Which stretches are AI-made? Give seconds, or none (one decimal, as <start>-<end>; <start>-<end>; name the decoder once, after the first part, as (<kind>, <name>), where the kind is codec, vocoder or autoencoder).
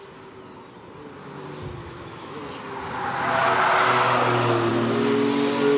1.8-2.4 (autoencoder, DAC-VAE)